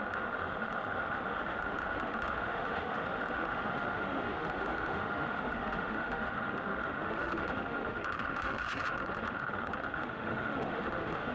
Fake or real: fake